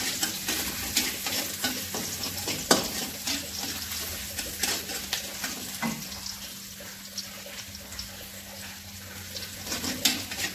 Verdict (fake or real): real